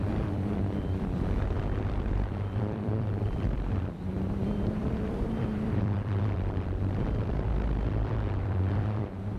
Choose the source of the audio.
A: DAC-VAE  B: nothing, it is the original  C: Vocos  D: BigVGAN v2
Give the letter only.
D